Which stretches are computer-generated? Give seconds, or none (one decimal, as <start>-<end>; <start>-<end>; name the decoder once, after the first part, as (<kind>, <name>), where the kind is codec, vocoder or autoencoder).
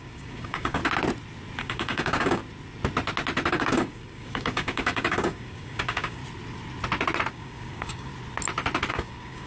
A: 0.0-0.8 (codec, DAC); 1.6-2.4; 3.5-6.2; 7.3-8.1; 8.9-9.5